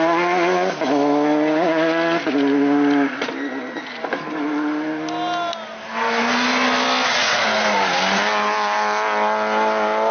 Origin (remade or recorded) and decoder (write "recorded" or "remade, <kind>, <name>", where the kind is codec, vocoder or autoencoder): recorded